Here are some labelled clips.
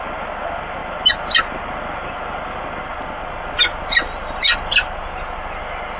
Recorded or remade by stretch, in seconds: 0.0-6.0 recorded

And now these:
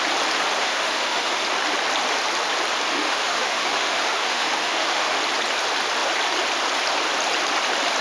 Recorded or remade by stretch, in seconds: 0.0-0.6 recorded; 0.6-1.3 remade; 1.3-2.9 recorded; 2.9-5.2 remade; 5.2-8.0 recorded

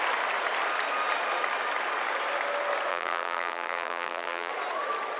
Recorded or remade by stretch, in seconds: 0.0-2.9 recorded; 2.9-4.5 remade; 4.5-5.2 recorded